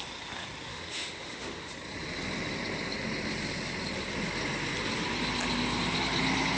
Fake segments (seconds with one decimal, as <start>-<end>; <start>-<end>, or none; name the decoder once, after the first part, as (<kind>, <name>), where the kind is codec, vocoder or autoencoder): 0.7-1.7 (autoencoder, DAC-VAE)